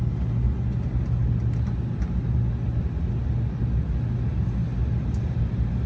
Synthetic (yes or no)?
no